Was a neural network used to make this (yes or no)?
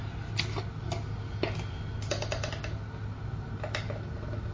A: no